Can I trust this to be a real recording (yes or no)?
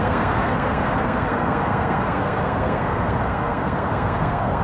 no